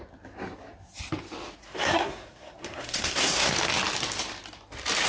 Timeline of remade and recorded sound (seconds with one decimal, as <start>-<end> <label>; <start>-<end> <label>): 0.0-1.6 recorded; 1.6-3.5 remade; 3.5-5.1 recorded

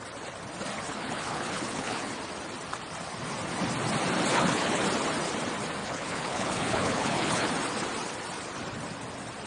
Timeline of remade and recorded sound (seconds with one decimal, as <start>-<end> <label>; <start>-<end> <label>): 0.0-0.9 recorded; 0.9-2.1 remade; 2.1-4.3 recorded; 4.3-4.8 remade; 4.8-5.8 recorded; 5.8-7.5 remade; 7.5-9.5 recorded